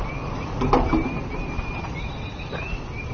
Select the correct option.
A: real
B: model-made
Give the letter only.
A